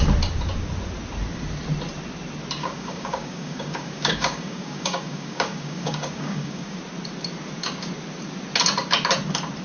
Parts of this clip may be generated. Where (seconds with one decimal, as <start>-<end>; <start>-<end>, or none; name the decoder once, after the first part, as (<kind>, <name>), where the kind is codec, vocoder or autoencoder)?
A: 2.6-6.8 (codec, DAC)

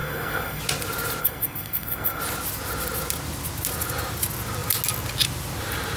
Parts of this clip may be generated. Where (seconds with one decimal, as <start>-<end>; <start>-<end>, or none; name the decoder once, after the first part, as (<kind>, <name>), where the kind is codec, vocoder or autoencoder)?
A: 0.0-0.6 (codec, SNAC); 1.2-2.2

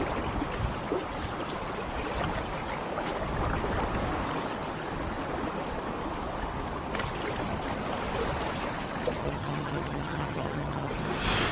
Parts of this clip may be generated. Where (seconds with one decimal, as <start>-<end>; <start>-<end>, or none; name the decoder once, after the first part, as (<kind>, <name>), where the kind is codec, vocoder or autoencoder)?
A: 9.2-10.9 (vocoder, HiFi-GAN)